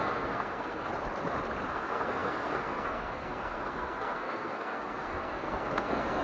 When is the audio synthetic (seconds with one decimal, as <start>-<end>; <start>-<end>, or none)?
0.0-0.9; 1.7-6.2